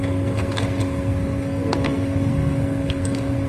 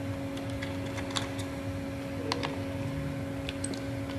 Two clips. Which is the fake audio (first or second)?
first